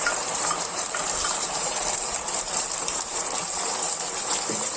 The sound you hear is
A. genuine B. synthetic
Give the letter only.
B